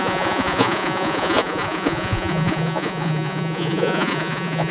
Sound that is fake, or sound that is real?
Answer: fake